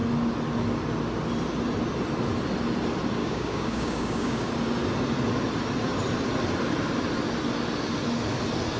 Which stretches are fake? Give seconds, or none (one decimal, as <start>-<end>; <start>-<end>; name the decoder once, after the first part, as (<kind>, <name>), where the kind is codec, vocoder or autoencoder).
3.2-4.5 (codec, DAC)